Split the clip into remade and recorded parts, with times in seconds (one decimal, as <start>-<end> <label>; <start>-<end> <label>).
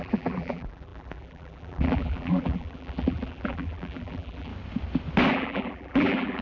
0.0-4.5 remade; 4.5-5.3 recorded; 5.3-6.4 remade